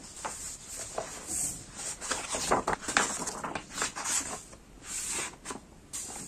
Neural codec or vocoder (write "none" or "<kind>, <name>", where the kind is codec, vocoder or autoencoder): none